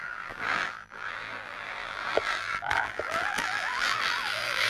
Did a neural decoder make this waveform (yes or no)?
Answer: yes